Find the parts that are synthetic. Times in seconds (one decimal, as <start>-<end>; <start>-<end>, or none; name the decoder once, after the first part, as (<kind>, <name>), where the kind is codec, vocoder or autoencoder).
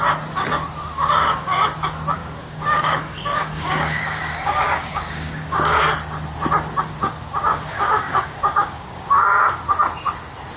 1.0-1.7 (codec, DAC); 2.2-5.8; 7.5-9.4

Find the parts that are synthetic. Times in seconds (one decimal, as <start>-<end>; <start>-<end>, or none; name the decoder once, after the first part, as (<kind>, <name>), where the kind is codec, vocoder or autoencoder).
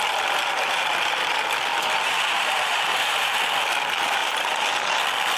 1.7-3.4 (vocoder, BigVGAN v2); 4.2-4.7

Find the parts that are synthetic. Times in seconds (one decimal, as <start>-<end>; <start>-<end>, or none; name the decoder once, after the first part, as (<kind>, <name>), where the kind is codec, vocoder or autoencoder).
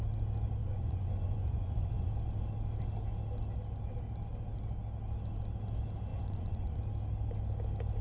0.6-2.1 (vocoder, Vocos); 6.1-6.8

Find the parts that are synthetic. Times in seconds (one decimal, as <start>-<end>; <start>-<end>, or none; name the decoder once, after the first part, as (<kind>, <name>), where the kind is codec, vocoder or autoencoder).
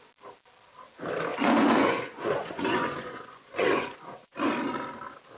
1.3-4.5 (vocoder, Vocos)